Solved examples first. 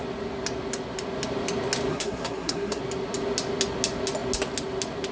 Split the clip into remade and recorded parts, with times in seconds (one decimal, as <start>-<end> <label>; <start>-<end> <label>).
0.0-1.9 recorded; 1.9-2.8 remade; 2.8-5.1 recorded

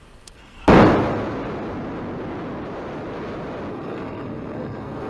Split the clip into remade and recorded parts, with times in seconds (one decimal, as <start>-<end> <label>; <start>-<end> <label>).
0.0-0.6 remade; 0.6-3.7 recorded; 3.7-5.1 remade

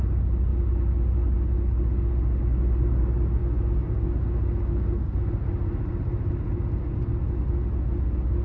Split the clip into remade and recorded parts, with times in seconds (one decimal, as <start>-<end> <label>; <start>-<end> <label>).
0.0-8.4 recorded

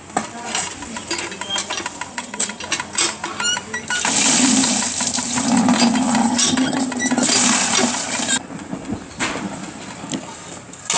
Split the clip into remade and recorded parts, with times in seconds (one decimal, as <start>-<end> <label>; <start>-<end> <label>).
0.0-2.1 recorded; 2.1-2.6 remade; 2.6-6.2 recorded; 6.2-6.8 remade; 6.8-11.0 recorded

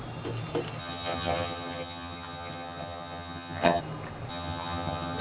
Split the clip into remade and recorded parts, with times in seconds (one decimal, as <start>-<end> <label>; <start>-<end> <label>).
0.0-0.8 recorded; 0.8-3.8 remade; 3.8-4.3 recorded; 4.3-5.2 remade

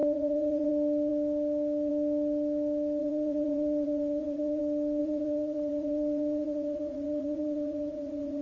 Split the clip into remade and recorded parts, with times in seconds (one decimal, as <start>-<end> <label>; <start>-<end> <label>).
0.0-0.7 remade; 0.7-3.0 recorded; 3.0-4.6 remade; 4.6-5.0 recorded; 5.0-8.4 remade

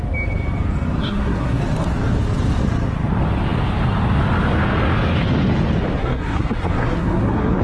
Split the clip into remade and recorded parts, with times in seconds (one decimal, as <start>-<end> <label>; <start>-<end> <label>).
0.0-1.0 recorded; 1.0-1.6 remade; 1.6-6.0 recorded; 6.0-7.6 remade

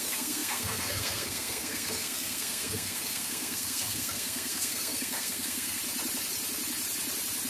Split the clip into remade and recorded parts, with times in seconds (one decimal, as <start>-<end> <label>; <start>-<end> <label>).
0.0-5.8 remade; 5.8-7.5 recorded